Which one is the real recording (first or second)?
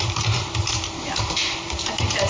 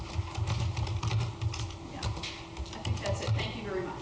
second